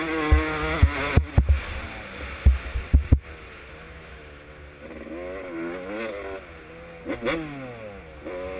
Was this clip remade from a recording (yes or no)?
no